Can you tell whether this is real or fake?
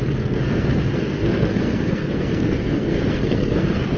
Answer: fake